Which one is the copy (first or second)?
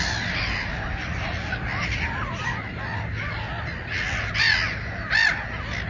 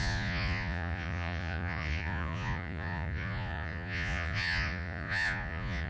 second